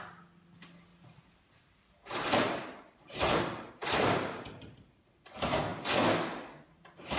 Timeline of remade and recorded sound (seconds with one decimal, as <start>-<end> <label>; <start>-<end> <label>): 0.0-0.9 recorded; 0.9-5.2 remade; 5.2-7.2 recorded